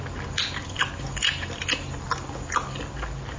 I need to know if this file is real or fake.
real